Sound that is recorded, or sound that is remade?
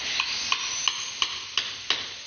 recorded